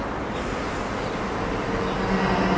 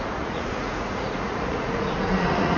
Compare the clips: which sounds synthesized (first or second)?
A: second